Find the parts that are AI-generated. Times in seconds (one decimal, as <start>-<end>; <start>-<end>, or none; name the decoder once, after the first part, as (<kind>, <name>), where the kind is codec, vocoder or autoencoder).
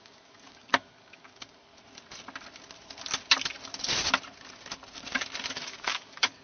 0.0-1.7 (codec, DAC); 5.5-6.4